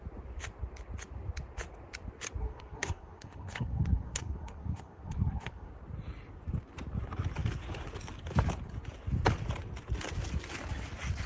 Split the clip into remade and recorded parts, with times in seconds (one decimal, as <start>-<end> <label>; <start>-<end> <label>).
0.0-2.4 recorded; 2.4-5.7 remade; 5.7-11.3 recorded